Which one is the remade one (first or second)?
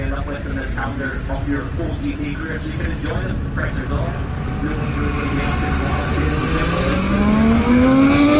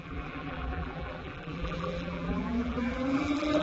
second